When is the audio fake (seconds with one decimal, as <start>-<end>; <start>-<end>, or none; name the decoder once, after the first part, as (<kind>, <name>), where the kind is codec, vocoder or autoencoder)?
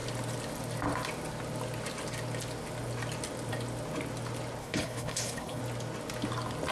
4.6-5.6 (codec, HILCodec)